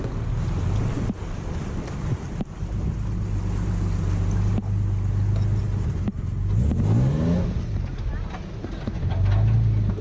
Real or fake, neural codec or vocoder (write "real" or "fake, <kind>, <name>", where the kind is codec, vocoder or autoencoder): real